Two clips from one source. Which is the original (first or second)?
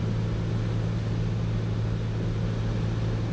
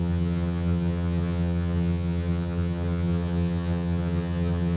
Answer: first